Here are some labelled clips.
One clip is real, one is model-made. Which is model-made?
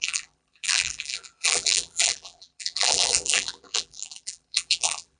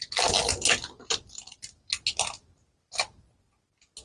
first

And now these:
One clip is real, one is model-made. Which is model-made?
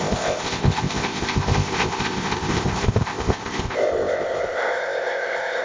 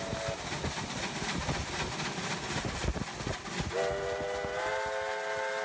first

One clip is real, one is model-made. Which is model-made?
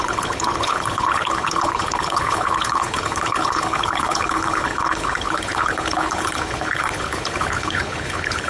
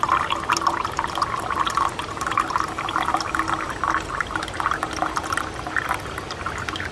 first